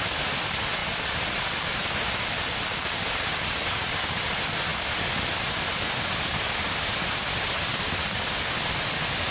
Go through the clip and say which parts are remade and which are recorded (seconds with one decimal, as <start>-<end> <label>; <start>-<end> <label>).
0.0-9.3 recorded